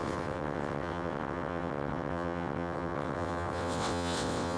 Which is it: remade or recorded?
remade